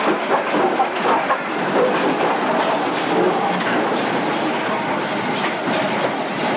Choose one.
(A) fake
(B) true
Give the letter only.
B